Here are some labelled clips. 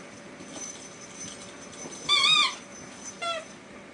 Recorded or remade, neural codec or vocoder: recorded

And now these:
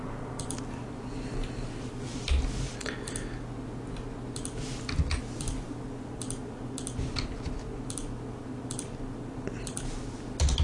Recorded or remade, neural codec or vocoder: recorded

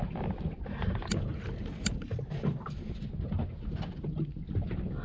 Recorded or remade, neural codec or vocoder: recorded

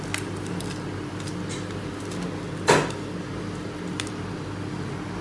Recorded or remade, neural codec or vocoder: recorded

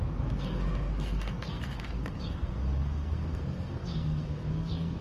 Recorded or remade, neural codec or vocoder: remade, codec, SNAC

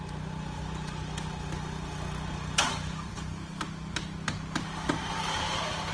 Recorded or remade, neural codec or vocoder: recorded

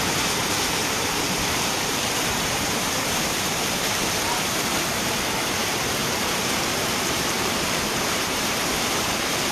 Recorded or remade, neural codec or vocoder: remade, vocoder, BigVGAN v2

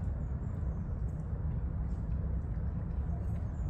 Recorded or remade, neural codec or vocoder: recorded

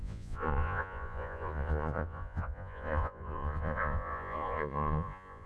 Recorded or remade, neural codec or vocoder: remade, vocoder, Vocos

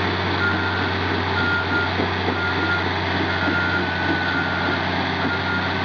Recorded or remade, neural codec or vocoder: recorded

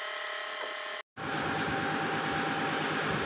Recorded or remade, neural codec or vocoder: recorded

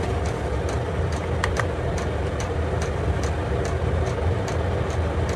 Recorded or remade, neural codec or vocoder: recorded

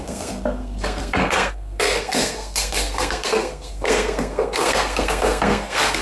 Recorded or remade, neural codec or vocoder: remade, codec, SNAC